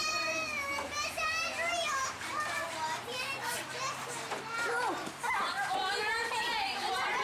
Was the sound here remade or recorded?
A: recorded